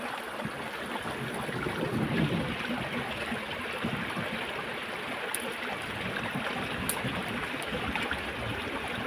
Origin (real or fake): real